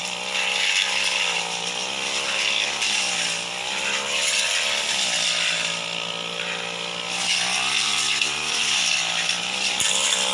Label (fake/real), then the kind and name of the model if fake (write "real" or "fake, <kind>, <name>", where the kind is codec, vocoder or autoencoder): real